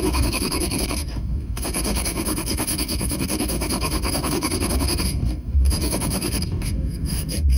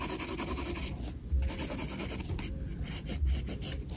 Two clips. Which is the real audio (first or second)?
second